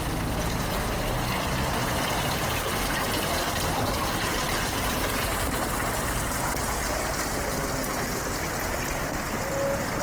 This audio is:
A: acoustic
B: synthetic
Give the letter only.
A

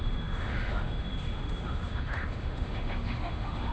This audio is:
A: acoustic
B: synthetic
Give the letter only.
B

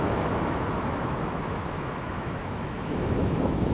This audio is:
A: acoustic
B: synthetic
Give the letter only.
B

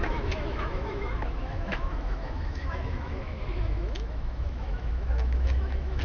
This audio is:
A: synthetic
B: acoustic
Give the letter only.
A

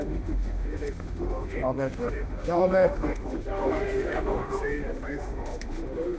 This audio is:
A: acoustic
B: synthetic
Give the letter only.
B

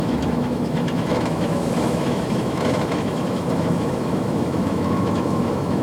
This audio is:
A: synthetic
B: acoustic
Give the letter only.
A